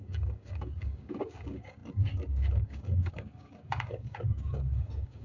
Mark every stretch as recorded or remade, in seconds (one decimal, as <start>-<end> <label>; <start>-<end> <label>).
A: 0.0-5.2 remade